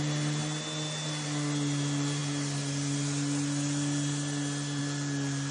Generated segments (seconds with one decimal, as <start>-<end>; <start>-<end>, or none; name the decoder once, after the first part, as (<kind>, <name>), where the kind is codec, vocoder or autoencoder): none